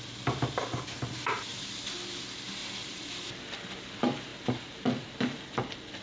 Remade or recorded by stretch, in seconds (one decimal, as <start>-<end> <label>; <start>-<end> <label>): 0.0-2.6 recorded; 2.6-3.1 remade; 3.1-4.3 recorded; 4.3-5.1 remade; 5.1-6.0 recorded